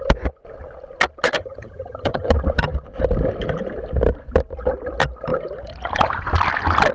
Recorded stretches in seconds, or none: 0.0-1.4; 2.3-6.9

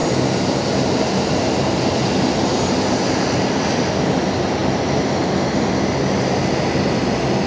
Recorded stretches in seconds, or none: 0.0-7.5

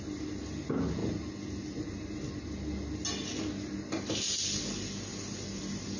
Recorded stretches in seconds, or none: 0.0-6.0

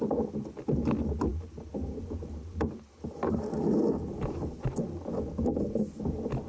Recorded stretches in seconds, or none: 0.0-6.5

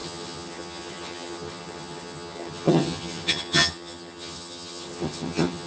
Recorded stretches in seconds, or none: none

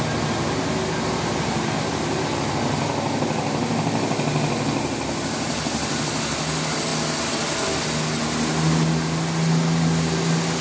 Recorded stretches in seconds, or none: 0.0-10.6

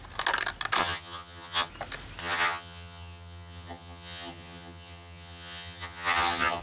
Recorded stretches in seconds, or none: 0.0-0.8; 1.7-2.2

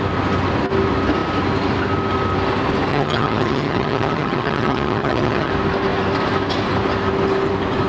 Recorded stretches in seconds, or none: 0.0-2.9; 5.5-7.9